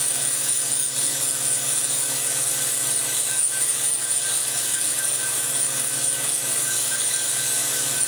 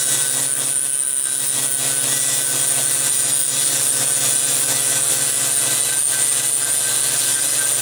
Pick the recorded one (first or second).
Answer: second